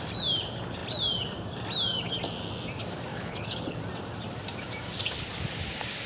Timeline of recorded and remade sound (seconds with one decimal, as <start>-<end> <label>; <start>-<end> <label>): 0.0-3.1 recorded; 3.1-3.8 remade; 3.8-6.1 recorded